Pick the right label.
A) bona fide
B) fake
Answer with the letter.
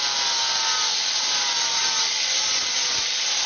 A